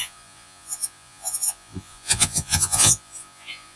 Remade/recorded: remade